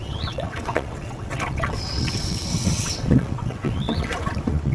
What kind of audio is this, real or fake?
fake